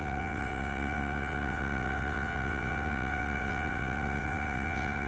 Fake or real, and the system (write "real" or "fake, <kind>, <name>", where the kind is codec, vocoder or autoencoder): fake, vocoder, WaveNeXt